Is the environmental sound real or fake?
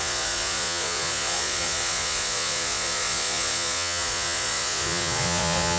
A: fake